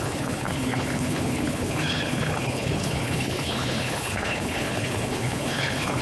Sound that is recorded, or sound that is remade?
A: remade